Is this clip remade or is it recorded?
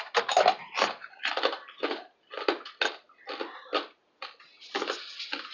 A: recorded